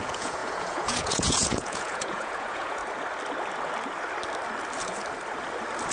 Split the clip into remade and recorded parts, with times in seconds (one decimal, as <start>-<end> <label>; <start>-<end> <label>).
0.0-2.8 remade; 2.8-5.9 recorded